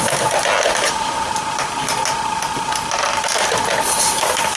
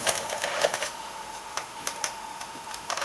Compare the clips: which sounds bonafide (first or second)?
first